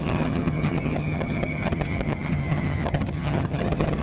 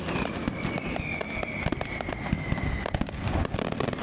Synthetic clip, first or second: first